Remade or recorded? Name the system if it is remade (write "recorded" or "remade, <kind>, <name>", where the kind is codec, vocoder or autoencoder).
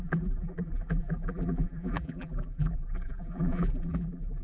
remade, vocoder, BigVGAN v2